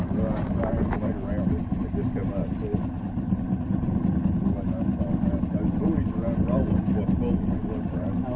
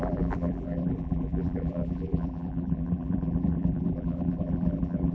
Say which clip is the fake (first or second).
second